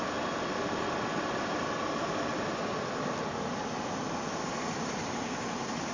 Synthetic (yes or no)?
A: no